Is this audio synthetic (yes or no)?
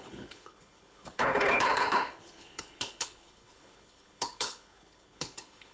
yes